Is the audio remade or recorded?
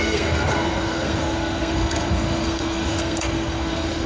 remade